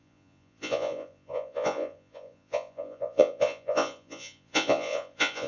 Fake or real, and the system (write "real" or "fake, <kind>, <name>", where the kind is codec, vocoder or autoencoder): fake, vocoder, Vocos